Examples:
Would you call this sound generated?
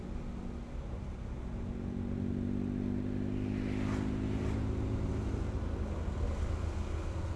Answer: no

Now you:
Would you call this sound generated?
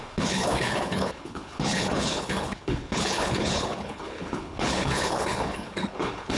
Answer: yes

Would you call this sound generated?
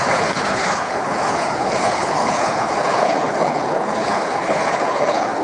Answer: yes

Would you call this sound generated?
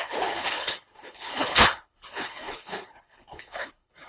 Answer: yes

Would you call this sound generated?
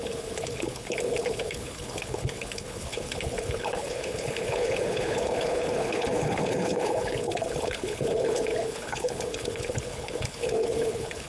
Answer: yes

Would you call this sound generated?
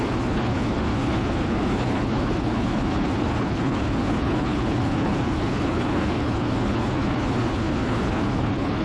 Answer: yes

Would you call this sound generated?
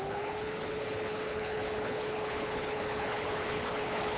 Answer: yes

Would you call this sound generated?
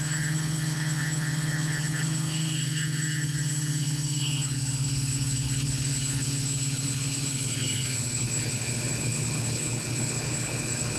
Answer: yes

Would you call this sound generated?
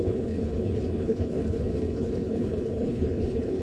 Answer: yes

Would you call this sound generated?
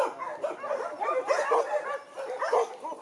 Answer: no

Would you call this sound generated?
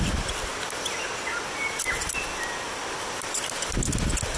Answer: no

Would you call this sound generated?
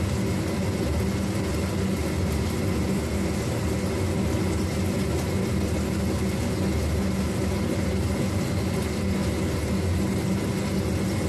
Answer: no